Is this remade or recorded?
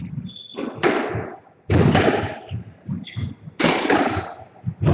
recorded